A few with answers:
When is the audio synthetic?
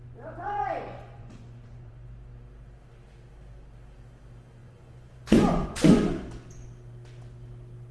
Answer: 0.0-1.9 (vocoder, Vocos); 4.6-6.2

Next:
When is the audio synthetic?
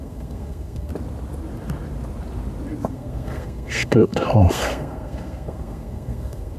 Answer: 0.0-0.9 (codec, SNAC); 2.9-6.6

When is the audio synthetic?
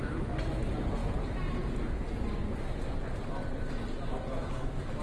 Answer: 1.0-2.2 (vocoder, Vocos)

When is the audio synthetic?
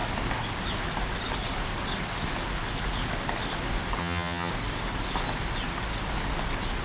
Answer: 4.0-4.5 (vocoder, HiFi-GAN)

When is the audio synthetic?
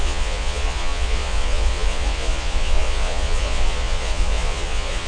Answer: 0.0-5.1 (vocoder, Vocos)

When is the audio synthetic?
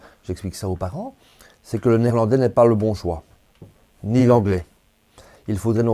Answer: 4.2-4.7 (codec, SNAC)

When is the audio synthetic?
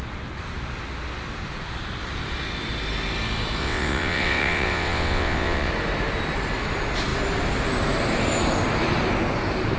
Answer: 3.6-5.7 (vocoder, WaveNeXt)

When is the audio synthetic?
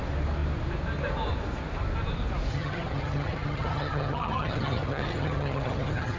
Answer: 2.5-6.2 (vocoder, HiFi-GAN)